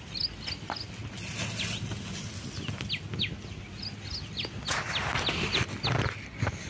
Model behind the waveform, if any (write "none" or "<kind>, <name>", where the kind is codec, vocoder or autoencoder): none